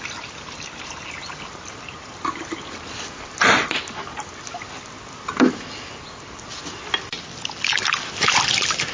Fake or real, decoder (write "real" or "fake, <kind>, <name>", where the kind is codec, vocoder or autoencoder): real